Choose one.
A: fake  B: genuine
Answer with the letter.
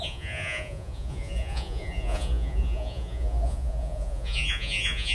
A